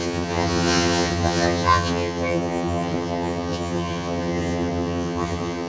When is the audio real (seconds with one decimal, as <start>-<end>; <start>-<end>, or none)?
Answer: none